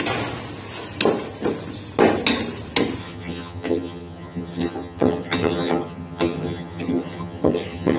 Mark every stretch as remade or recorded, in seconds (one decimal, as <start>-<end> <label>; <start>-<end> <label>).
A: 0.0-3.0 recorded; 3.0-8.0 remade